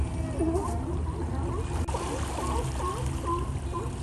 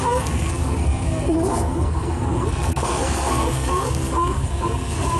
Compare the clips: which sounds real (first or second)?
first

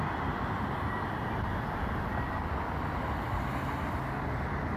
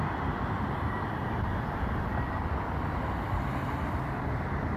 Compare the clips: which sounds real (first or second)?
first